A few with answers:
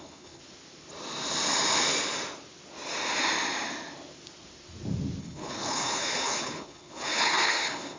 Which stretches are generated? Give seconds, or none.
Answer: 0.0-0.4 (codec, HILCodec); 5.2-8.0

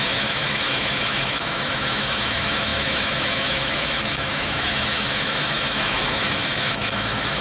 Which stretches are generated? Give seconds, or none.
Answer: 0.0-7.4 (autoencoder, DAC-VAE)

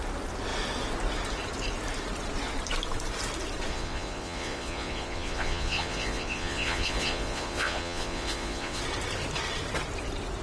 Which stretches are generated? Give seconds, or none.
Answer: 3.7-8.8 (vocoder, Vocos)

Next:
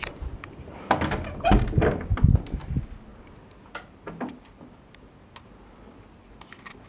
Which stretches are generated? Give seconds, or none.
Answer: none

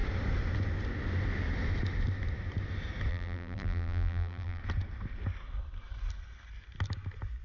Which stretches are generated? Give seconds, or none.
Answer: 3.1-4.6 (vocoder, BigVGAN v2)

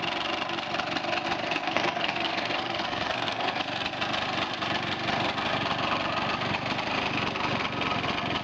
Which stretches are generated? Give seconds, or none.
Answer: 1.4-3.6 (codec, SNAC)

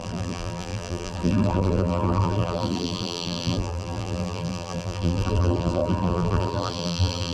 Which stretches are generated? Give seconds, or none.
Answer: 0.0-7.3 (vocoder, BigVGAN v2)

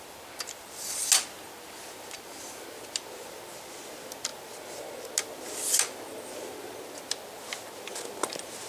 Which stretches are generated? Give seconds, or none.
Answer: none